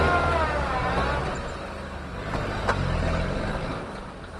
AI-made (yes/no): no